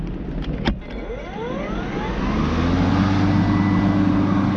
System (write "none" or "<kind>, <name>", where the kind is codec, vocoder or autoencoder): none